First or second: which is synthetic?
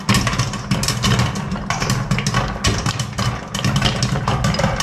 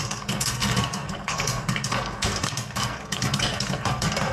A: second